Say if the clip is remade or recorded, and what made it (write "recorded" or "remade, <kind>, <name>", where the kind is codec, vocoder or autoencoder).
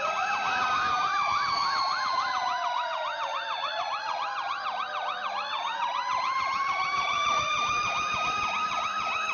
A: remade, vocoder, Vocos